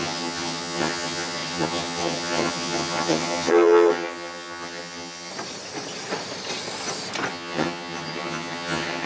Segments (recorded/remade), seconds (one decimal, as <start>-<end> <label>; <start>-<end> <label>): 0.0-5.3 remade; 5.3-7.3 recorded; 7.3-9.1 remade